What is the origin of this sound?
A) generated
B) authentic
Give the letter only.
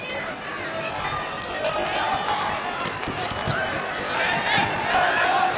B